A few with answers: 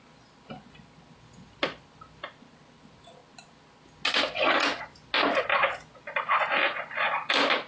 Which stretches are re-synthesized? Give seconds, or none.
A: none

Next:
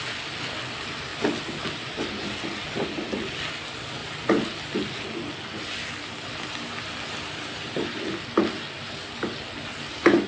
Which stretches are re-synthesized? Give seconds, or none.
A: none

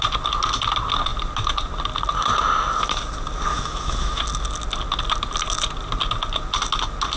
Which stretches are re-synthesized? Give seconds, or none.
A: 3.5-4.2 (autoencoder, DAC-VAE)

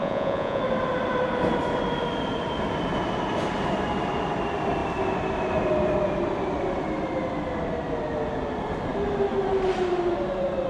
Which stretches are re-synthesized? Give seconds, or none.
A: 0.0-0.6 (vocoder, Vocos)

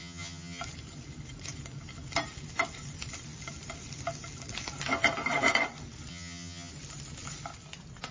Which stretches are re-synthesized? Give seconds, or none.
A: 0.0-0.6 (vocoder, HiFi-GAN); 6.1-6.7

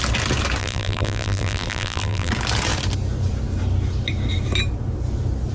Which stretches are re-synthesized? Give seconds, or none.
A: 0.6-2.3 (vocoder, BigVGAN v2)

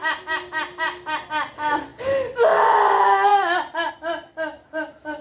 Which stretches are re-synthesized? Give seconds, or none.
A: none

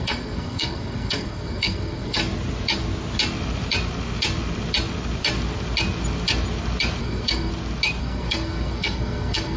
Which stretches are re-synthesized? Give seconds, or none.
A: 0.0-2.2 (codec, SNAC); 7.0-7.5; 8.0-9.6